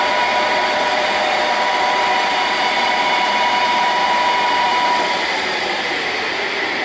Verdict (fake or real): fake